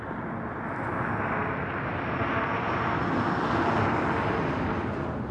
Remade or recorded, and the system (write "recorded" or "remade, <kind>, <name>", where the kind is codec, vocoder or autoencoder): recorded